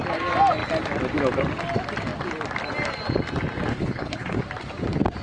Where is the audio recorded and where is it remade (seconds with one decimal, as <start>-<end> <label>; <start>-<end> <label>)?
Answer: 0.0-3.7 recorded; 3.7-4.4 remade; 4.4-5.2 recorded